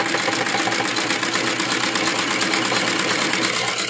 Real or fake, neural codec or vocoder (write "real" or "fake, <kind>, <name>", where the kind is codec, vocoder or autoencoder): real